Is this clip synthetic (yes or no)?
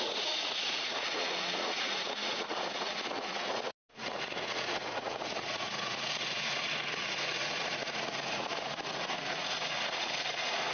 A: yes